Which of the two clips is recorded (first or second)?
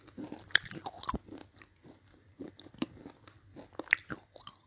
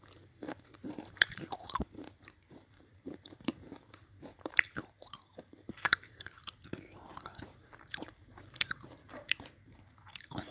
first